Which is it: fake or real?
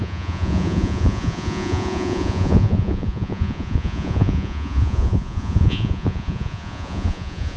fake